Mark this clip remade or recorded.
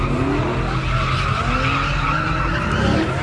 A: recorded